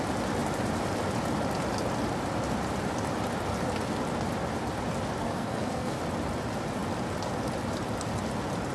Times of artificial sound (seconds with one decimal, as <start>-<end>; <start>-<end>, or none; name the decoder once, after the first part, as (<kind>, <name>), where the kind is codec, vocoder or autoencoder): 5.2-6.0 (codec, SNAC)